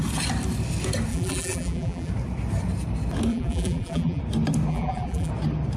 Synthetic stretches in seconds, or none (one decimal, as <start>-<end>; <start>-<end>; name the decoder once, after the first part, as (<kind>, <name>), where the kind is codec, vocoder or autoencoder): 1.1-2.1 (vocoder, BigVGAN v2); 3.3-4.2; 4.7-5.3